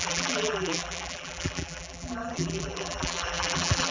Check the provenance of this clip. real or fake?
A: fake